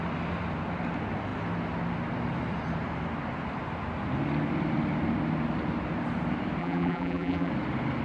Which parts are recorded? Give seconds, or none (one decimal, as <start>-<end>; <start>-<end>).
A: 0.0-6.6; 7.5-8.0